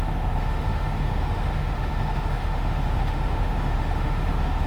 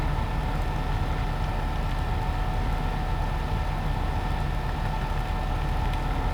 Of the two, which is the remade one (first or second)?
first